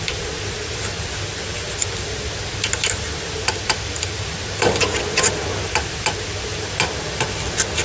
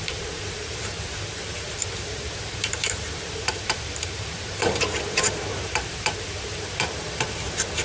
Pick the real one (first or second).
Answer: first